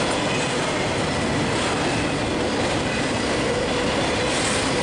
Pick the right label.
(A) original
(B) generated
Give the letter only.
A